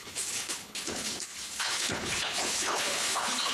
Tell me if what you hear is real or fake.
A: fake